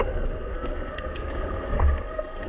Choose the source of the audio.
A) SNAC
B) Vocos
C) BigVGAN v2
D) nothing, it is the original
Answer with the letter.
A